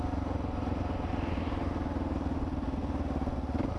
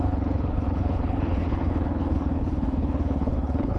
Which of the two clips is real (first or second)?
first